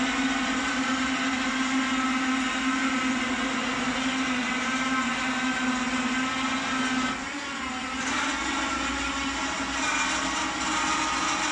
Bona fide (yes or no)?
yes